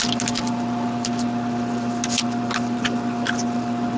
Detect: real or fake real